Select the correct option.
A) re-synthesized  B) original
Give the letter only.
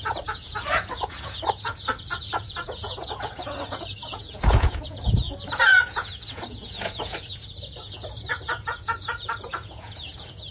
A